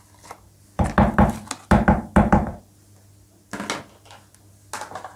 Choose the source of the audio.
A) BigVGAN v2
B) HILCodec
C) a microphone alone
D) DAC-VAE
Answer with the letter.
C